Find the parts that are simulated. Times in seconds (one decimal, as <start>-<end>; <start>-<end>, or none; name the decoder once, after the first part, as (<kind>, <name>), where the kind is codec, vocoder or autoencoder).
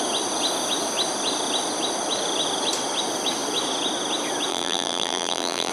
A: 4.5-5.7 (vocoder, BigVGAN v2)